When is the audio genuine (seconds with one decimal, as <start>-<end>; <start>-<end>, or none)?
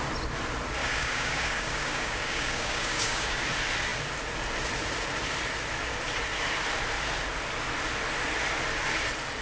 0.0-0.8; 3.4-9.4